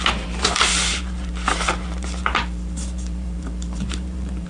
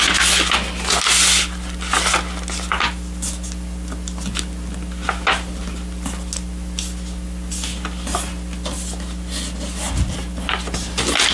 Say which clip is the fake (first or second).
first